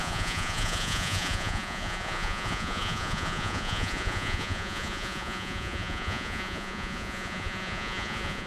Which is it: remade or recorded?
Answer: remade